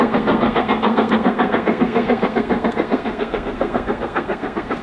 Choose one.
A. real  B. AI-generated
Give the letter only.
B